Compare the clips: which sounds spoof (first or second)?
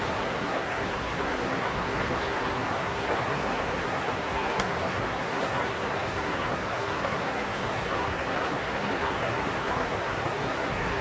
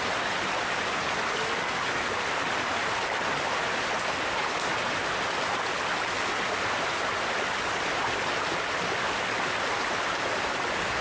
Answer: first